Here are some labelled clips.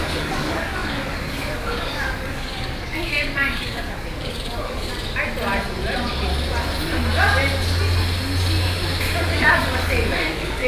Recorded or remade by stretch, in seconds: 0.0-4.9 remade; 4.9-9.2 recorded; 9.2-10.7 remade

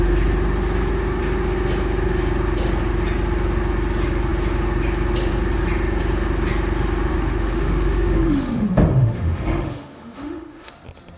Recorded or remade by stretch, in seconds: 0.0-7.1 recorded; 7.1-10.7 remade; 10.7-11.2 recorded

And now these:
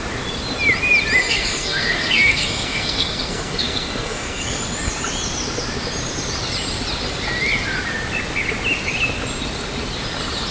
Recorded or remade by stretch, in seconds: 0.0-1.2 recorded; 1.2-4.6 remade; 4.6-10.5 recorded

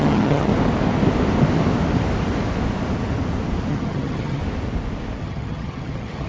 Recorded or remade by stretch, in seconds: 0.0-0.5 remade; 0.5-3.7 recorded; 3.7-4.4 remade; 4.4-5.2 recorded; 5.2-6.3 remade

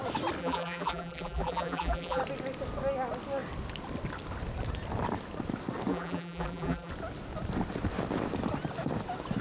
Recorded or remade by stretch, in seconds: 0.0-0.4 recorded; 0.4-2.2 remade; 2.2-5.9 recorded; 5.9-6.9 remade; 6.9-9.4 recorded